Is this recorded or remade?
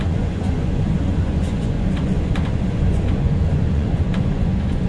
remade